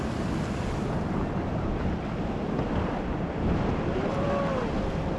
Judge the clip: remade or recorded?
recorded